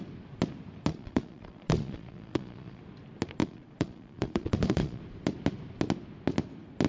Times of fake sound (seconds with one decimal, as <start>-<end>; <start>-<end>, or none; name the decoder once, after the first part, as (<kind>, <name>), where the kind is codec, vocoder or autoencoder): 0.9-2.8 (vocoder, Vocos); 3.4-5.0